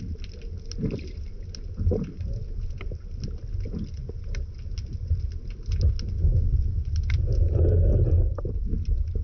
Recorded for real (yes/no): yes